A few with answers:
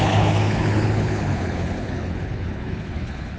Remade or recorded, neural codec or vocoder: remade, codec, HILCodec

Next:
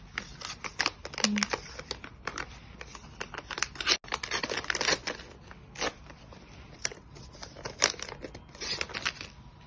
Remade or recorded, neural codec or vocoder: recorded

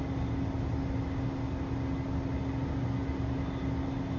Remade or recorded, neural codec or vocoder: recorded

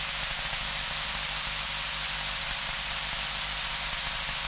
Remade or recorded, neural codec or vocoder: recorded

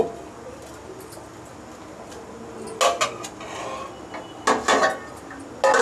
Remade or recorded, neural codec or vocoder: recorded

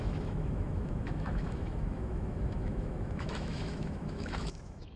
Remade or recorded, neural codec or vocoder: remade, autoencoder, DAC-VAE